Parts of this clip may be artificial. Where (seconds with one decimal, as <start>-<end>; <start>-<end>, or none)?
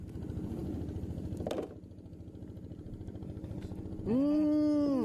none